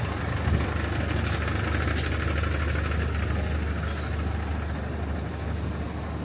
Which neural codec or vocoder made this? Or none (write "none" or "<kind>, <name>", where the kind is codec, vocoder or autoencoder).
none